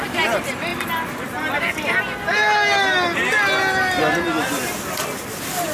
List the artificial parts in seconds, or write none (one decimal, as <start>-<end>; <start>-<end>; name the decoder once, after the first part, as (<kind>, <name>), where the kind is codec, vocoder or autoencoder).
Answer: none